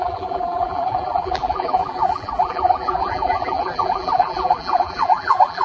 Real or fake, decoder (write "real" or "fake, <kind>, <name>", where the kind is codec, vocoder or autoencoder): fake, vocoder, BigVGAN v2